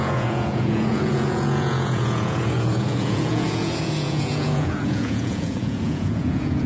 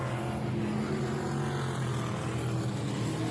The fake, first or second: first